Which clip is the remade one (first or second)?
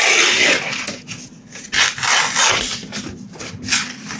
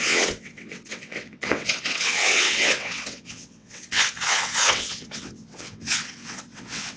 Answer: second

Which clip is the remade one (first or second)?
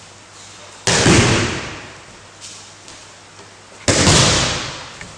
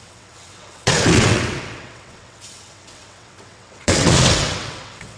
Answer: second